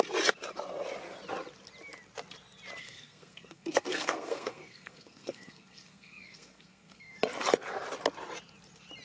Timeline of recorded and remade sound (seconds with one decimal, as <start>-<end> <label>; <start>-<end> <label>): 0.0-2.8 recorded; 2.8-7.2 remade; 7.2-9.0 recorded